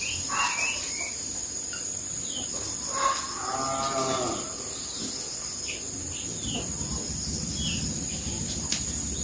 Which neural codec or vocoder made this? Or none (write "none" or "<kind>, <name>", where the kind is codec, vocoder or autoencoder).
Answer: none